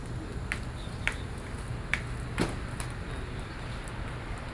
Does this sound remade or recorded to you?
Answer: recorded